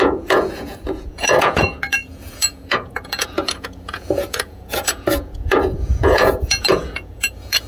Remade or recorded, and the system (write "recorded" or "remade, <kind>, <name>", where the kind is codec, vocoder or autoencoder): remade, vocoder, Vocos